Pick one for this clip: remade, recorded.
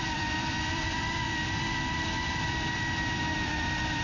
remade